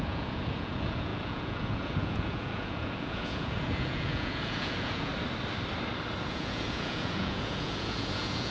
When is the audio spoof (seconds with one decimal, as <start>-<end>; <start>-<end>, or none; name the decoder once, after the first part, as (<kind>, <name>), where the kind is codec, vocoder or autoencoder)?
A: 0.0-5.1 (vocoder, Vocos); 6.3-8.5